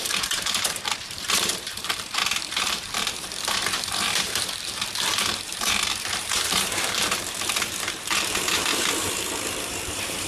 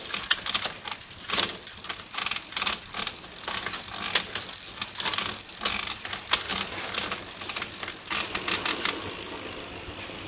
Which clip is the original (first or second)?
second